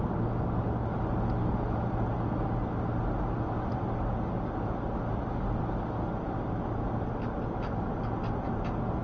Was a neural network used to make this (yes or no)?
no